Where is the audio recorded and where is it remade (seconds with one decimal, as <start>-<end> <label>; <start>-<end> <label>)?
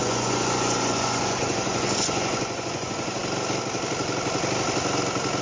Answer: 0.0-3.2 remade; 3.2-5.4 recorded